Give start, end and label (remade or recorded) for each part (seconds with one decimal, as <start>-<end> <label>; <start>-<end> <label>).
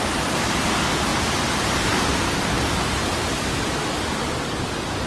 0.0-5.1 recorded